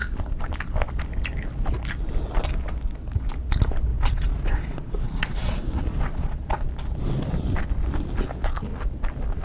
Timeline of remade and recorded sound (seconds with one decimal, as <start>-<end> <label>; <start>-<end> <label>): 0.0-3.9 recorded; 3.9-6.5 remade; 6.5-9.4 recorded